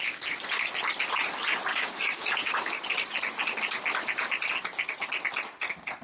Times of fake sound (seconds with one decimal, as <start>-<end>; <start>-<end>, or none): 1.7-2.5